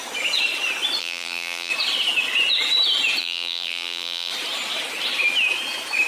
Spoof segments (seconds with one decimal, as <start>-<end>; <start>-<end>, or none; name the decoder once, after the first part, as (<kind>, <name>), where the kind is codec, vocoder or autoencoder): 1.0-1.7 (vocoder, BigVGAN v2); 3.2-4.3